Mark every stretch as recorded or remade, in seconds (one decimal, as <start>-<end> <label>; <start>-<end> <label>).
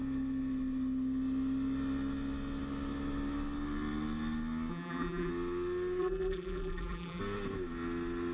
0.0-4.7 recorded; 4.7-5.3 remade; 5.3-6.0 recorded; 6.0-7.2 remade; 7.2-8.3 recorded